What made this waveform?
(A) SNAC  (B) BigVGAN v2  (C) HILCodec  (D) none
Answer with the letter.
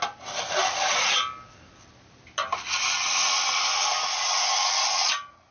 D